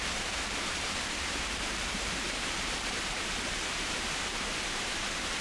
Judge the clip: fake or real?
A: fake